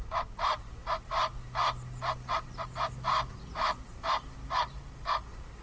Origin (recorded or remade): recorded